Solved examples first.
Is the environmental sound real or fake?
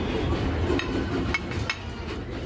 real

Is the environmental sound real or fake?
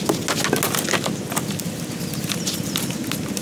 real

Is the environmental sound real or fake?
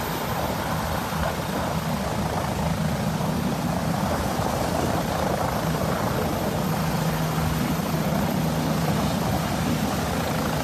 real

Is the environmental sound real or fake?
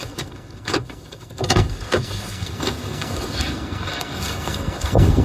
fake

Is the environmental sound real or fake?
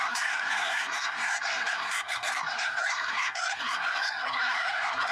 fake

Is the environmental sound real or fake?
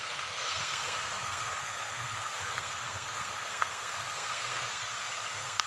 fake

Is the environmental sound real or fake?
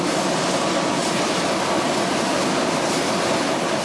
real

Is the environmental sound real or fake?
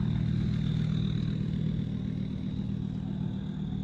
real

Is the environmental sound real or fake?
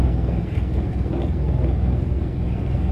fake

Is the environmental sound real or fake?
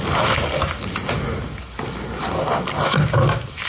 real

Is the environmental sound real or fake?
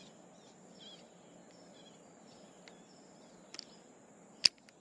real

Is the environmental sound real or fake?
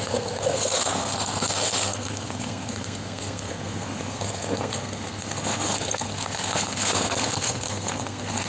fake